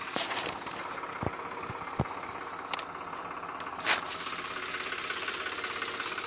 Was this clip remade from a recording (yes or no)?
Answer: no